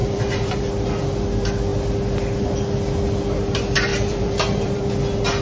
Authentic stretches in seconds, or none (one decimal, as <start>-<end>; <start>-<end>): 0.7-3.9; 4.8-5.4